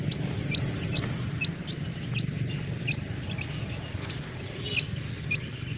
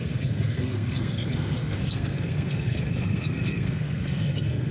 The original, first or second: first